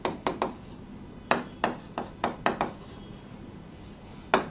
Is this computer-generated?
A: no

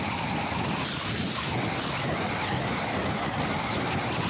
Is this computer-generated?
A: no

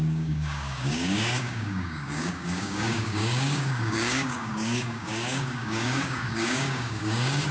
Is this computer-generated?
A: yes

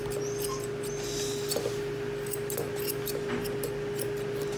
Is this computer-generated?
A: no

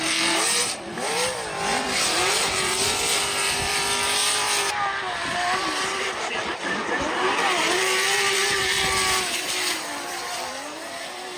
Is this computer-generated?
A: yes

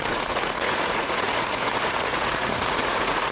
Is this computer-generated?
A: yes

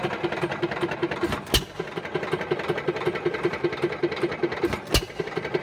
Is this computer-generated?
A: no